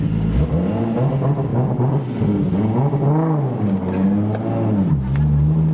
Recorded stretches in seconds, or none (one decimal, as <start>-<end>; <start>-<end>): 0.0-5.7